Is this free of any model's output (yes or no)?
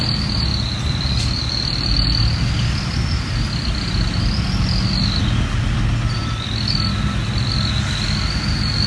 yes